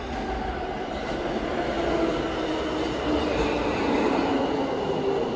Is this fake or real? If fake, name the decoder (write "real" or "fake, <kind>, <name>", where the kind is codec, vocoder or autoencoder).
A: real